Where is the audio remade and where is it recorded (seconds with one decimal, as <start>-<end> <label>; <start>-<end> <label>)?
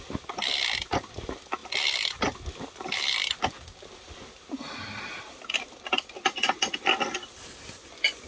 0.0-8.3 recorded